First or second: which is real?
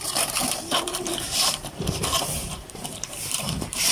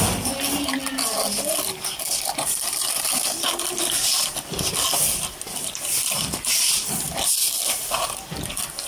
second